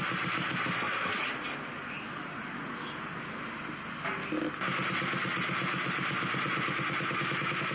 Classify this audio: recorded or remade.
recorded